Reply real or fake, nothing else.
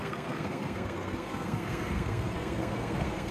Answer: fake